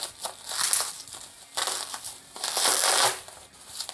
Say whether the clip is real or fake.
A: real